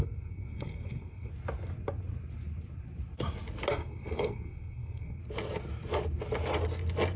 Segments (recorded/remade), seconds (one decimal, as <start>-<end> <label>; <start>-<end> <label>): 0.0-1.3 remade; 1.3-3.7 recorded; 3.7-5.2 remade; 5.2-7.2 recorded